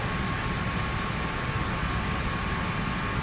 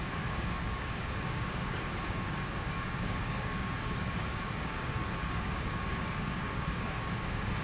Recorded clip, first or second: first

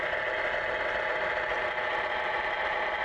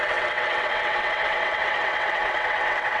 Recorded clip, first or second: first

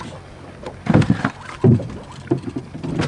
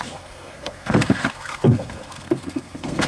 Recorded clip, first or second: first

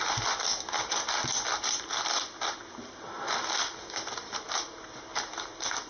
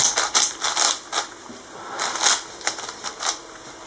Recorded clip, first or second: second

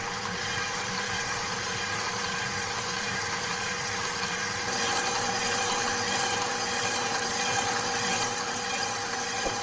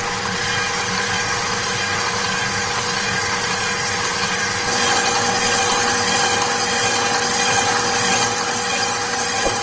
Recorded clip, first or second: second